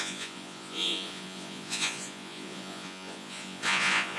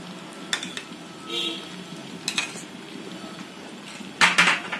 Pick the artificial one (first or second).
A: first